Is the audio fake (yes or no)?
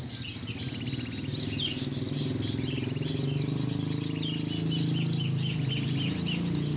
no